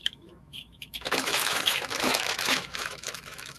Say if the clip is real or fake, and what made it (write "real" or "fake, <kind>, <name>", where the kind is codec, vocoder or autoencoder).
fake, autoencoder, DAC-VAE